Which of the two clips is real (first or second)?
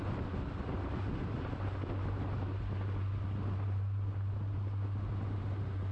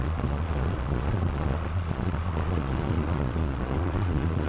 first